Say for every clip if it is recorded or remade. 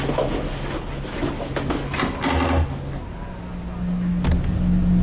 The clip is recorded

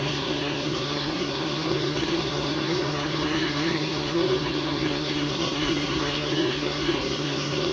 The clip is remade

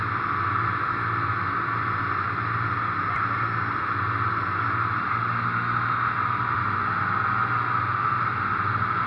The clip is recorded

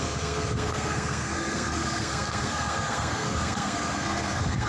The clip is remade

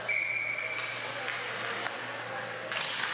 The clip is recorded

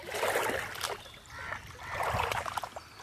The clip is recorded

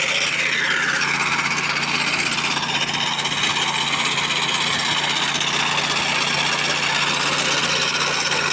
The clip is recorded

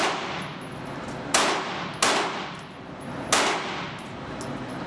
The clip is recorded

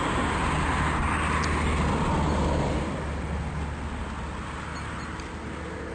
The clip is recorded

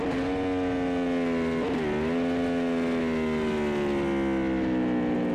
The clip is recorded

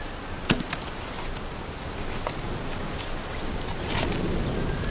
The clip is recorded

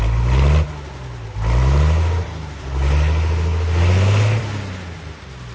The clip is recorded